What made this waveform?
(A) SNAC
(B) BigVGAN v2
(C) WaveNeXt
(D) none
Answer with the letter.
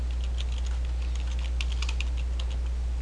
D